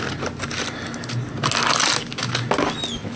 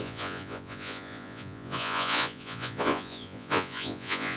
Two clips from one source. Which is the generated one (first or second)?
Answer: second